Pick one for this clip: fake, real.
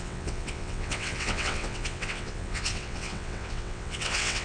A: fake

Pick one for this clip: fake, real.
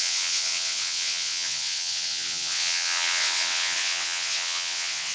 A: fake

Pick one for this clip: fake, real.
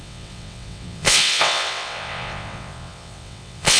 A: fake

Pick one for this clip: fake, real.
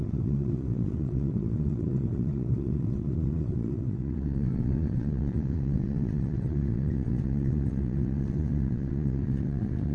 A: fake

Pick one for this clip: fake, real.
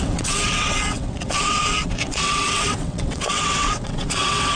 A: fake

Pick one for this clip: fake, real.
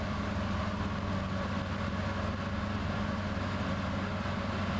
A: real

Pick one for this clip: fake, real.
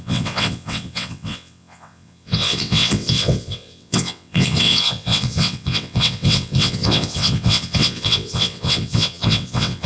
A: fake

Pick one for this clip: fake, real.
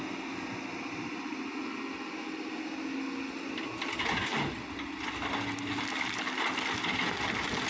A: real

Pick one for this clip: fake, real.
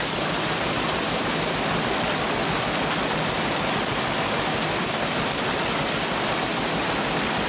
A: real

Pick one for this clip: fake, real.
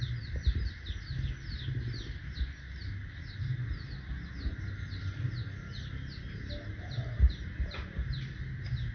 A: real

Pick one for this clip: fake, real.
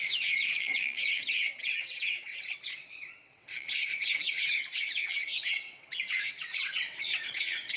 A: fake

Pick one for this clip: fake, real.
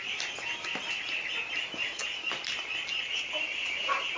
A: real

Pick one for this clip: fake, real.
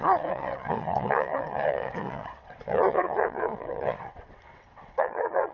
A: fake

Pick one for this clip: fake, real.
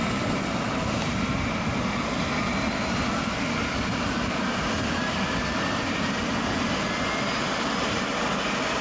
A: real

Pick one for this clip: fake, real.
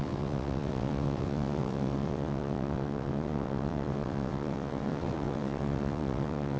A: fake